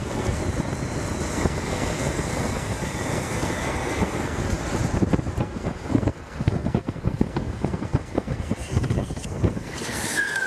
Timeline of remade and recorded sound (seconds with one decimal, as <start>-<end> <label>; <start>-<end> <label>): 0.0-0.4 remade; 0.4-1.3 recorded; 1.3-4.6 remade; 4.6-5.4 recorded; 5.4-10.5 remade